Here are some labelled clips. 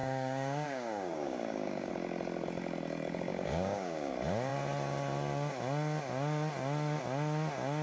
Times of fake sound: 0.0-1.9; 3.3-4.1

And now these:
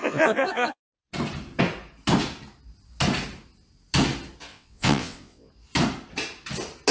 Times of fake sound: 0.0-0.8; 4.5-5.5

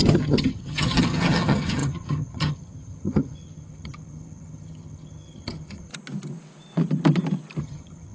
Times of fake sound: 0.0-5.9; 7.6-8.1

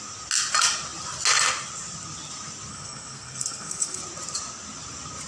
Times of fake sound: 2.7-4.0

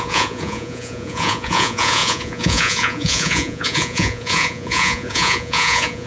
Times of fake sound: 0.0-6.1

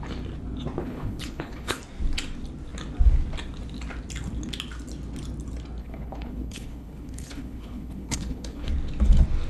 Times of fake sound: 0.8-1.8; 5.8-8.7

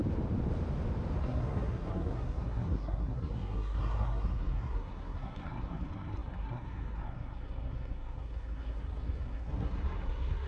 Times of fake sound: 1.2-10.5

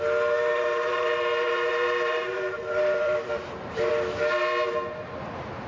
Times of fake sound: 0.5-3.9